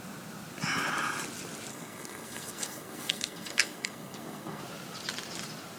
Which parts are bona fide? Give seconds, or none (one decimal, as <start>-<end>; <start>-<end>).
0.0-1.7; 4.6-5.8